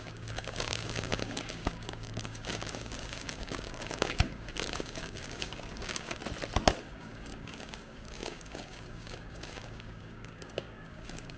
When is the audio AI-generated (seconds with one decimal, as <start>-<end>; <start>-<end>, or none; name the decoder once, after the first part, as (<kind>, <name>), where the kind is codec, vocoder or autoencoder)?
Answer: 0.0-6.2 (codec, DAC); 6.8-11.4